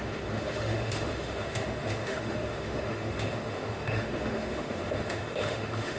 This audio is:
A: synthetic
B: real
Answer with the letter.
A